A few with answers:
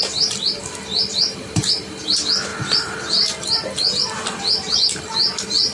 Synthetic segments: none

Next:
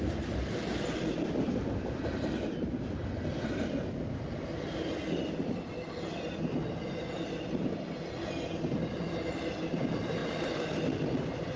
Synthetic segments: none

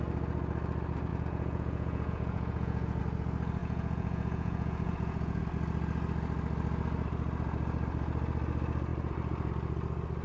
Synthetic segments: 1.1-3.0 (vocoder, Vocos); 3.6-5.4